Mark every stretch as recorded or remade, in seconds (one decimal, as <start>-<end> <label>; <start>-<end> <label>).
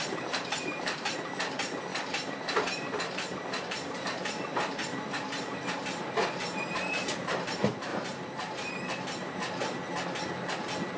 0.0-9.8 remade; 9.8-11.0 recorded